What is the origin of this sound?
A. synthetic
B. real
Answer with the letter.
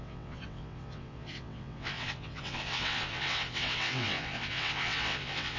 A